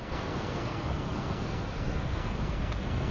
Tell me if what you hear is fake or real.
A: fake